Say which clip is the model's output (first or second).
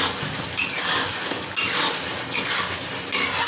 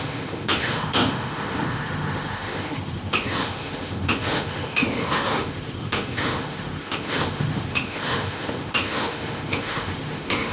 second